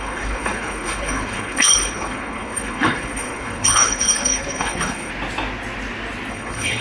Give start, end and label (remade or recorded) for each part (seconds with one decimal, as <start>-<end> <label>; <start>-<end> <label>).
0.0-5.1 remade; 5.1-6.3 recorded; 6.3-6.8 remade